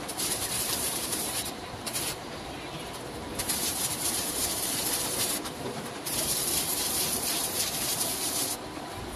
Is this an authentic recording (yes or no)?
no